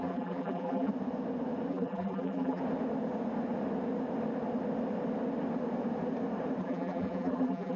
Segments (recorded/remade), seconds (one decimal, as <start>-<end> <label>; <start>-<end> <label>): 0.0-0.9 remade; 0.9-1.7 recorded; 1.7-2.6 remade; 2.6-6.6 recorded; 6.6-7.8 remade